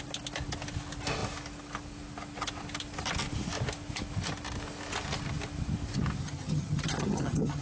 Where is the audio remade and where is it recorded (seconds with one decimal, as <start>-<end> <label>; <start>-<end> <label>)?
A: 0.0-6.2 recorded; 6.2-7.6 remade